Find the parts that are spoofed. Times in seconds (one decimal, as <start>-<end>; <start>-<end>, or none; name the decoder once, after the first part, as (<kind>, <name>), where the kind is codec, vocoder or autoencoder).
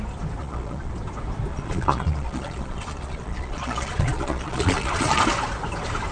0.4-0.9 (vocoder, Vocos); 1.5-5.2